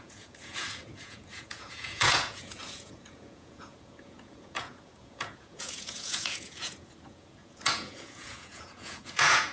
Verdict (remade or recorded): remade